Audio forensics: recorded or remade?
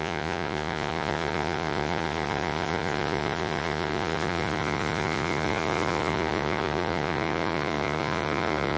remade